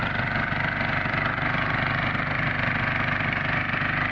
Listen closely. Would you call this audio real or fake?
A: real